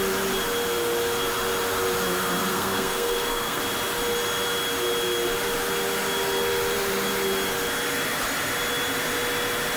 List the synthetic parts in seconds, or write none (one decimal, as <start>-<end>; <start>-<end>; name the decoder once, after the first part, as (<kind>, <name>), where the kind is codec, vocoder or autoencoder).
2.5-3.6 (codec, SNAC)